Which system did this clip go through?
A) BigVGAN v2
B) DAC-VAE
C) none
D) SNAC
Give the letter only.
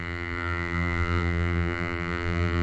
A